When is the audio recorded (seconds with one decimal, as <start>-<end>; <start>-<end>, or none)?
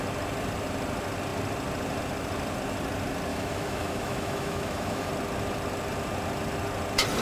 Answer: 0.0-3.3; 5.1-7.2